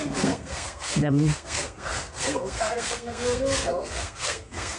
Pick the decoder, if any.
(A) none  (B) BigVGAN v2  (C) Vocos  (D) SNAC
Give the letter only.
D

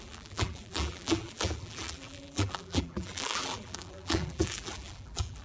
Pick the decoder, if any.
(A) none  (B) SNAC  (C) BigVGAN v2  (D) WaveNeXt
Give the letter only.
C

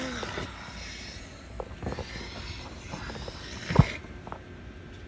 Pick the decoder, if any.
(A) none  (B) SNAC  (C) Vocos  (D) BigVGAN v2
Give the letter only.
A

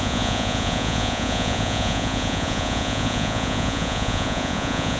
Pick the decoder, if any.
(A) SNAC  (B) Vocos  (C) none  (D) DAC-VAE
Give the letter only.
B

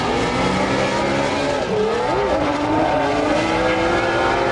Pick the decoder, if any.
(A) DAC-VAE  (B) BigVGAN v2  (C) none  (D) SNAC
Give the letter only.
C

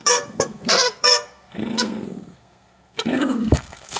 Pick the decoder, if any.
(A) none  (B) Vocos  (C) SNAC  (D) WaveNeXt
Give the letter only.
C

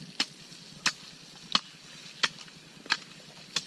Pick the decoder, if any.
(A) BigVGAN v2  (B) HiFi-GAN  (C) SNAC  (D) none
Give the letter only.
D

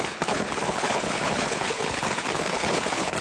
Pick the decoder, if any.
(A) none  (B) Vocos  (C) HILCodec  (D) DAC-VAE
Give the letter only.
C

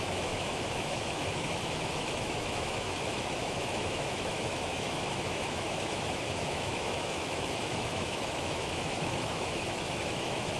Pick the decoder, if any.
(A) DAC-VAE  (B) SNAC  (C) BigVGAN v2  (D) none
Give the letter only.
A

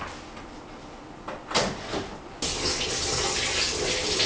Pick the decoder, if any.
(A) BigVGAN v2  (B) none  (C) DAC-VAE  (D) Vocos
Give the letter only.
B